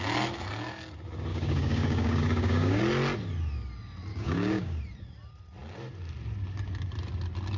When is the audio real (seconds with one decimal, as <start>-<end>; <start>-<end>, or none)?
0.0-1.3; 2.8-4.1; 4.8-7.6

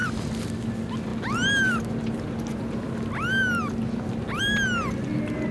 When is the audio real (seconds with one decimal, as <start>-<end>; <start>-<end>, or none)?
0.0-5.5

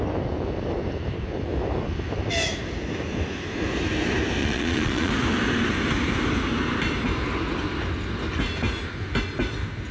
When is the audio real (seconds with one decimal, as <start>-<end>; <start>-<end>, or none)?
0.0-4.4; 5.1-9.9

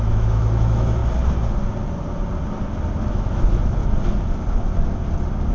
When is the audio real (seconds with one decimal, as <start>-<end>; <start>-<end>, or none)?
1.0-3.1; 3.8-5.5

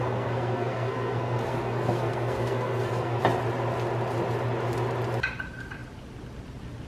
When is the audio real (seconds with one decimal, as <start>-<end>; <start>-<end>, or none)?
3.2-6.9

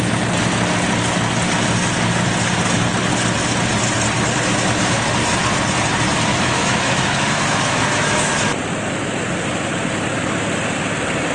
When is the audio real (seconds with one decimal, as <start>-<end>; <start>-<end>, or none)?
0.0-6.3; 8.3-11.3

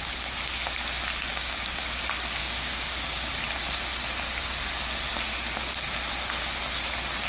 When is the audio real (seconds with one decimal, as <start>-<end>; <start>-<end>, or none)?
0.0-1.3; 1.8-2.4; 3.3-7.3